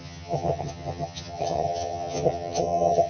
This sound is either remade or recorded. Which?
remade